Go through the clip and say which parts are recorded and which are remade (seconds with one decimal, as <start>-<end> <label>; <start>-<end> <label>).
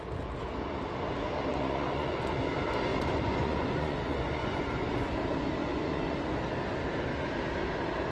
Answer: 0.0-1.5 recorded; 1.5-2.4 remade; 2.4-2.9 recorded; 2.9-5.1 remade; 5.1-5.6 recorded; 5.6-6.2 remade; 6.2-8.1 recorded